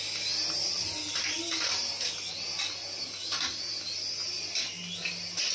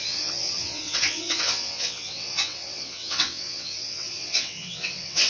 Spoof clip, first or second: second